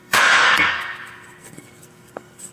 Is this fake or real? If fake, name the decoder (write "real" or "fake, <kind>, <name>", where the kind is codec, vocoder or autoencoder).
fake, codec, SNAC